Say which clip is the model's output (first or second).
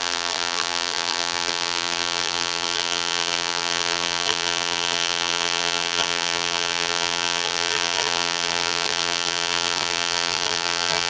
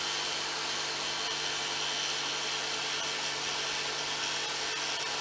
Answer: first